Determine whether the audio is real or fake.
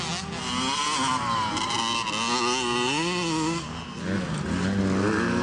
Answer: real